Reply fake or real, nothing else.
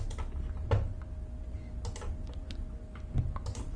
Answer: real